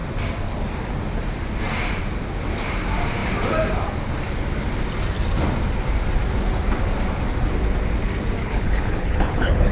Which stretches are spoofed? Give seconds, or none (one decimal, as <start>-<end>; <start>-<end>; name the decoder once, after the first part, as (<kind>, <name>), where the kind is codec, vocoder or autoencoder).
8.4-9.7 (codec, HILCodec)